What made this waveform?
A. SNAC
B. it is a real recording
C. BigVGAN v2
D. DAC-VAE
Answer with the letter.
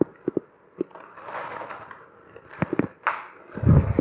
B